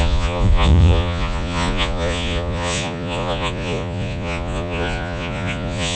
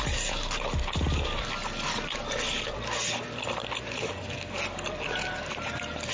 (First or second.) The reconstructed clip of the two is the first